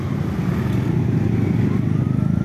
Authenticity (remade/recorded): recorded